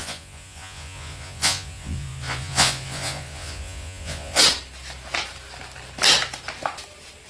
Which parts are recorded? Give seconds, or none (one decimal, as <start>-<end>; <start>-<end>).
4.4-7.3